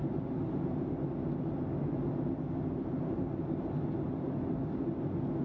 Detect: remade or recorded recorded